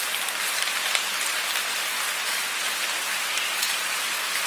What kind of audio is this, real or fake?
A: real